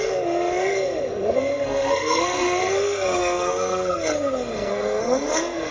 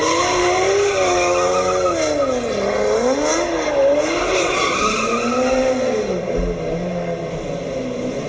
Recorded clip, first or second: second